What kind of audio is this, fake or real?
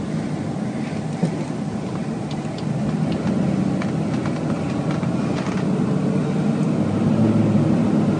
real